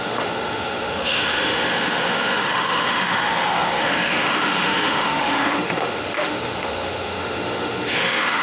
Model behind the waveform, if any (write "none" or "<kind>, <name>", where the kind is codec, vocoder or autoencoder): autoencoder, DAC-VAE